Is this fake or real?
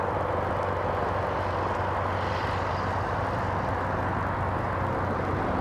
real